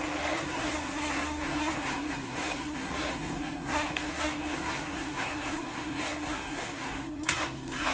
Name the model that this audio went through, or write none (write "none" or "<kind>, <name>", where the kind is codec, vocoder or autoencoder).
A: codec, SNAC